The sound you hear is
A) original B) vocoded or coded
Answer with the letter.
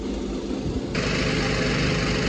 A